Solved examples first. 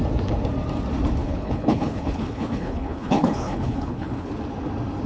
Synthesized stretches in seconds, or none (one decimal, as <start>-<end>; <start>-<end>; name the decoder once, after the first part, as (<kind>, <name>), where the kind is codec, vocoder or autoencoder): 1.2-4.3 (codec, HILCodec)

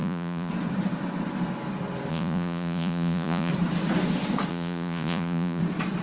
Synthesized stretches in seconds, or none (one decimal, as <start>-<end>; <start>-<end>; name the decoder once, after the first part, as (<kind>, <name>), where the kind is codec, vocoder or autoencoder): 0.0-0.5 (vocoder, Vocos); 2.1-3.5; 4.5-5.6

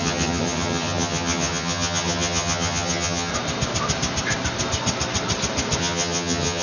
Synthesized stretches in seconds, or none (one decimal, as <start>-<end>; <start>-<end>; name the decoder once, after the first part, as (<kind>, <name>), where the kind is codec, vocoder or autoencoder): 0.0-3.3 (vocoder, HiFi-GAN); 5.8-6.6

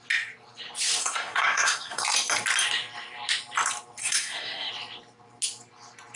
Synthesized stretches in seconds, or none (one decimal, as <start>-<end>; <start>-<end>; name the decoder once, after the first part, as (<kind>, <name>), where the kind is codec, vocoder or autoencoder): 1.0-2.0 (codec, SNAC); 4.0-4.7

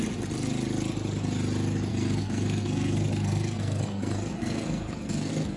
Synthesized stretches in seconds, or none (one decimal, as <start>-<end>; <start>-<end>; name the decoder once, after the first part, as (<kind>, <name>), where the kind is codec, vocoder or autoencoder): 1.9-5.6 (codec, SNAC)

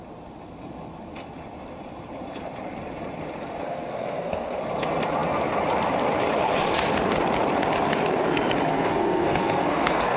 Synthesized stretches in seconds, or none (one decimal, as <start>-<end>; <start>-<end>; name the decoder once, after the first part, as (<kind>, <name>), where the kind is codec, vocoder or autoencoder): 3.6-4.6 (codec, SNAC); 8.7-10.2